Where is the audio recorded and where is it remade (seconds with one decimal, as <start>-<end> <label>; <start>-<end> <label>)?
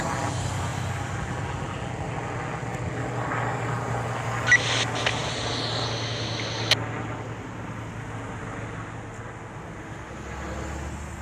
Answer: 0.0-0.7 recorded; 0.7-1.5 remade; 1.5-11.2 recorded